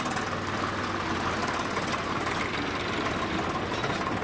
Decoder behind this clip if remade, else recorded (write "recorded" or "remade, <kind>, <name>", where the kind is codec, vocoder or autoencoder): recorded